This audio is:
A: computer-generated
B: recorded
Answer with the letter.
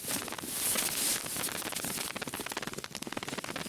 B